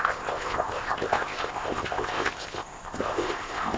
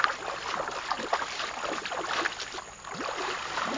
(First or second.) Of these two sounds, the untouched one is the second